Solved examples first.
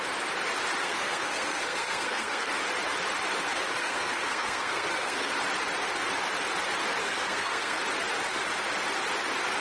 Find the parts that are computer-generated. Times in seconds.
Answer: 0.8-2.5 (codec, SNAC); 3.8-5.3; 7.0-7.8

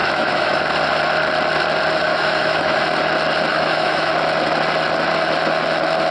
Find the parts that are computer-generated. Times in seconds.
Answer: 0.0-0.6 (autoencoder, DAC-VAE); 2.1-2.8; 3.5-4.1

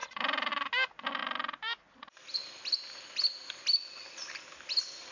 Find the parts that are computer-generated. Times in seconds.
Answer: 0.0-0.5 (vocoder, BigVGAN v2)